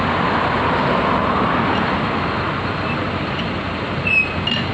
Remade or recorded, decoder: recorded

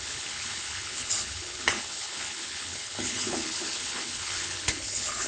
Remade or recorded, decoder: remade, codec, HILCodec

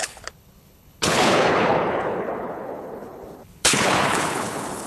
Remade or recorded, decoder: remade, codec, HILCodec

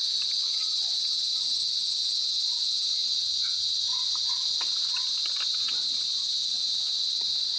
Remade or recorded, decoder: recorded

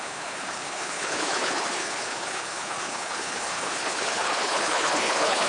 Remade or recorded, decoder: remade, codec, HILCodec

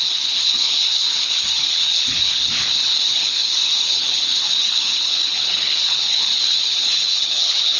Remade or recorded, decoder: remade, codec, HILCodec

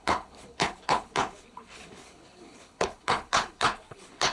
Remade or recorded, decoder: remade, codec, HILCodec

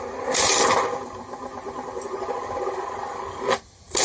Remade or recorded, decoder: recorded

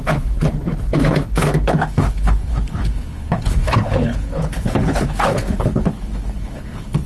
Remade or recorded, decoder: remade, codec, HILCodec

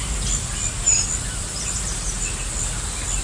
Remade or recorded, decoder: recorded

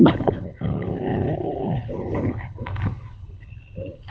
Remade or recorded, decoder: remade, codec, HILCodec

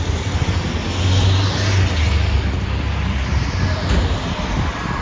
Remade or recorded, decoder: recorded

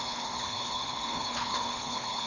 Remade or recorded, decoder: remade, codec, HILCodec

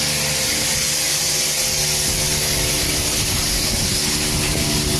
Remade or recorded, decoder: recorded